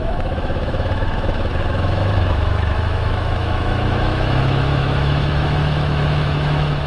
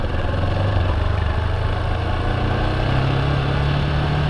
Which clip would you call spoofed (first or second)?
first